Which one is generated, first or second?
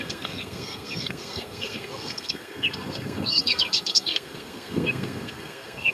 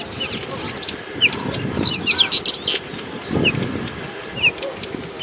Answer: first